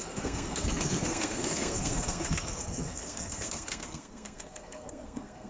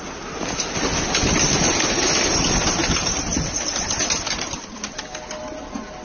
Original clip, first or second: second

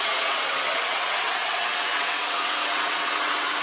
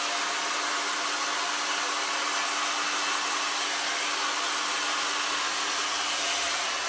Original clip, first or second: second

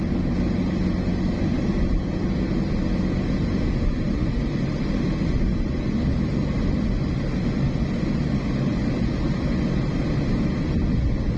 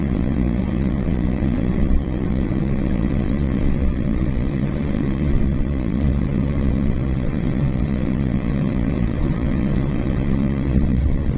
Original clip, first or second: first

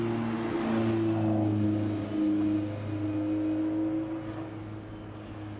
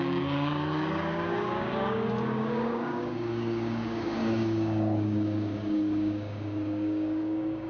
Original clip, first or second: first